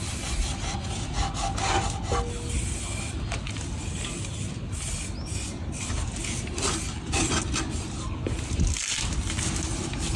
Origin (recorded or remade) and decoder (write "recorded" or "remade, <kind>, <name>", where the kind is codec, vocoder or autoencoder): recorded